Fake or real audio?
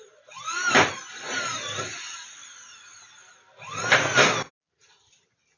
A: real